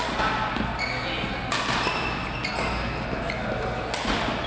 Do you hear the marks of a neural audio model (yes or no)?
no